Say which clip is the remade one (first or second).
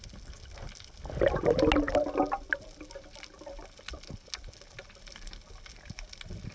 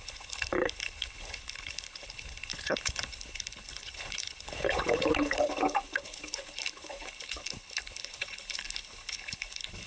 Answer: second